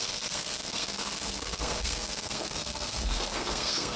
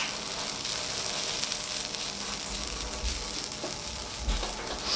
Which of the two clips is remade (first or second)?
first